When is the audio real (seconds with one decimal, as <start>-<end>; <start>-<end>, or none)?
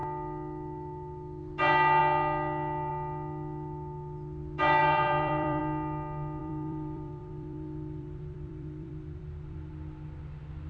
0.0-4.8; 5.6-6.4; 9.7-10.7